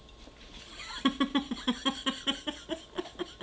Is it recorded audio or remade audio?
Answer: recorded